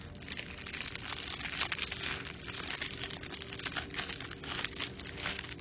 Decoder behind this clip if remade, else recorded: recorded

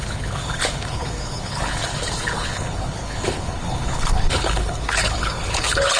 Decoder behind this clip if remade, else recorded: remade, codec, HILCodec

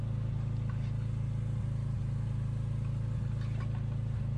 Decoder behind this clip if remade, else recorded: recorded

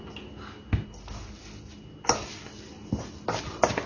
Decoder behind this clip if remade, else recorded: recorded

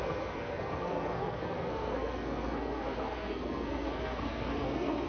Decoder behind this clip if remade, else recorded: remade, codec, SNAC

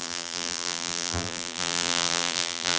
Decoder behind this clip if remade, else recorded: remade, vocoder, BigVGAN v2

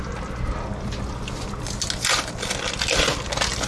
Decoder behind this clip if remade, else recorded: recorded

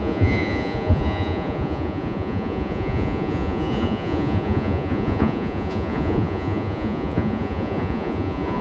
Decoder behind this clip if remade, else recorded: remade, vocoder, Vocos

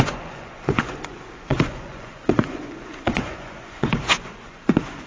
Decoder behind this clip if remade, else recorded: remade, vocoder, Vocos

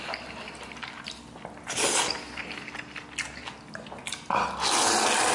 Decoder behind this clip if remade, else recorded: recorded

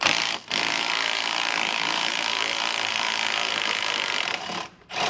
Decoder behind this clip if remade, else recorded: remade, vocoder, BigVGAN v2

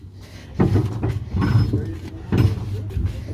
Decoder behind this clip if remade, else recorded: recorded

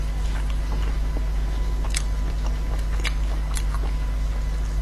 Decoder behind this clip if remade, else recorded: recorded